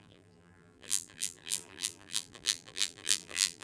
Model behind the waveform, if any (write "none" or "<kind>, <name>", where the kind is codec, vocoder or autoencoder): vocoder, BigVGAN v2